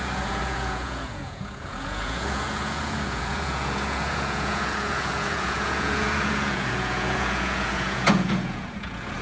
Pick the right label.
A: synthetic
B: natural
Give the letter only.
A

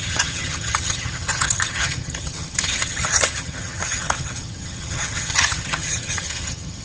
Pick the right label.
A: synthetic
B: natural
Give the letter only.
A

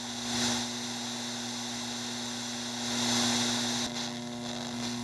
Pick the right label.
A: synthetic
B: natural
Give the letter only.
B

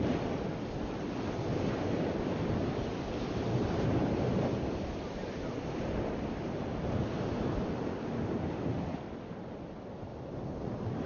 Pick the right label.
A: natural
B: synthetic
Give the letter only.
A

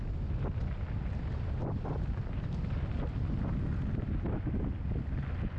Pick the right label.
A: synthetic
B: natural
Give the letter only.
B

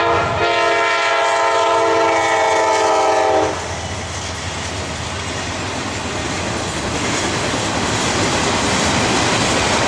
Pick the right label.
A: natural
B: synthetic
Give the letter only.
A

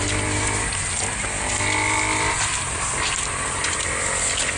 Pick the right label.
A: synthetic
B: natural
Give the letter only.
B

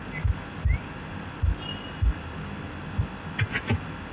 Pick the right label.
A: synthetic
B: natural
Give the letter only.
B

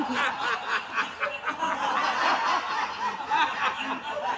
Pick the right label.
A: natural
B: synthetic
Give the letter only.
A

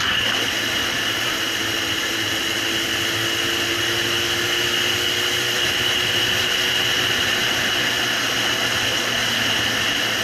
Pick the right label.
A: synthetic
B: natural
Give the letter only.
B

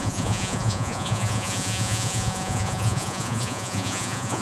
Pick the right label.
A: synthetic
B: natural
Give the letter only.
A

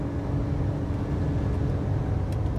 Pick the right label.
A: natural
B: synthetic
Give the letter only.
A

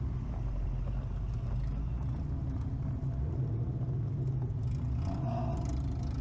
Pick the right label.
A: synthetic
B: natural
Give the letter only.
B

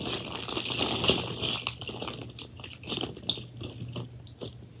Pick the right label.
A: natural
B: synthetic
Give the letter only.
A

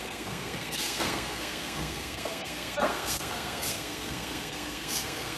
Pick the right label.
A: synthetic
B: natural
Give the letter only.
A